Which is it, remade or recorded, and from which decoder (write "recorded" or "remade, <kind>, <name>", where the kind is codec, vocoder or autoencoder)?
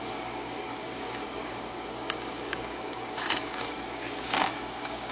remade, codec, DAC